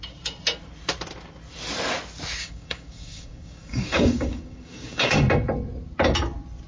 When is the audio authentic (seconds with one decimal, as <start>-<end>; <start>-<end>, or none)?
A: 0.0-2.4; 5.2-6.7